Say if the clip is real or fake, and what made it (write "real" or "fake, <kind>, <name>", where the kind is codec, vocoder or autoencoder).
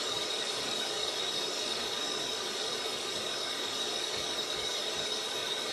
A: fake, codec, DAC